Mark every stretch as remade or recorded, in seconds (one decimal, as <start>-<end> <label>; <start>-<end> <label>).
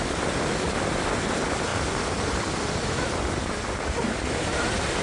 0.0-5.0 recorded